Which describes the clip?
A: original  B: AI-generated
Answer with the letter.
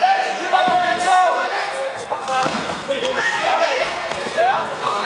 B